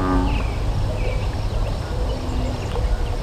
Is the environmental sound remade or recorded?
recorded